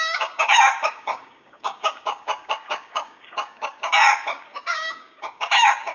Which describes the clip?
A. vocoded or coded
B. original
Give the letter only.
A